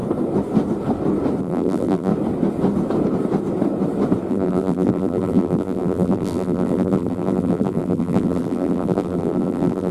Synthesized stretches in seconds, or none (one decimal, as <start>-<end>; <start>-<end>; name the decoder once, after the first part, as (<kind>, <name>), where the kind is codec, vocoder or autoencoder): 1.4-2.1 (vocoder, BigVGAN v2); 4.3-9.9

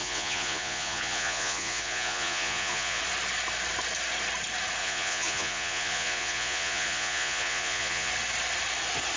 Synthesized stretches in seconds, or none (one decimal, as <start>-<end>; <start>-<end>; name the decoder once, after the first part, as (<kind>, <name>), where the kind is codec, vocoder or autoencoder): 0.0-3.0 (vocoder, Vocos); 4.8-8.1

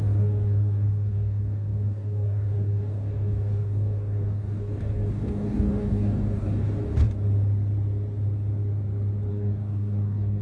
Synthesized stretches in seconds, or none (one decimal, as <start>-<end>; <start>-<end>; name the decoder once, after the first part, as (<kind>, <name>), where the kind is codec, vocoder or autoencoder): 0.0-6.8 (codec, DAC); 9.3-10.4

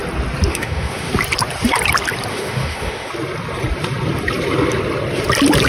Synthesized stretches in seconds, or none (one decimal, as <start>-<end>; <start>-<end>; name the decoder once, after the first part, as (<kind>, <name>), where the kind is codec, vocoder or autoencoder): 0.5-1.1 (autoencoder, DAC-VAE); 2.3-3.1

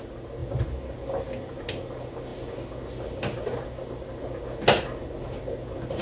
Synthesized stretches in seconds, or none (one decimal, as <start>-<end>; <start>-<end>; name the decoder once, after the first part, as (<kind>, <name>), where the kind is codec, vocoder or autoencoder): none

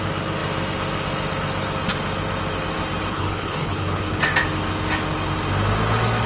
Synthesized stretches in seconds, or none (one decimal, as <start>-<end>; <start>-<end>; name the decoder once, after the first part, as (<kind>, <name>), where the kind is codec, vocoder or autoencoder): 3.1-4.2 (codec, HILCodec)